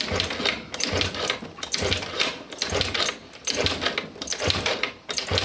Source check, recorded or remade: recorded